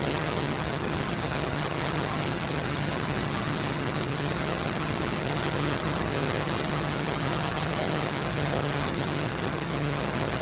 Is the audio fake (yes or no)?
yes